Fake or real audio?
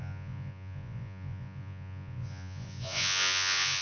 fake